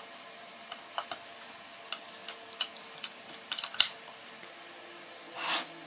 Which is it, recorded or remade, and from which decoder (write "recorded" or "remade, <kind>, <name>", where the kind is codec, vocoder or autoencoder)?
recorded